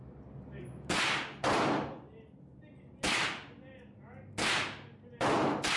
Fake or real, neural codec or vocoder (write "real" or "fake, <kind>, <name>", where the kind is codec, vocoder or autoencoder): real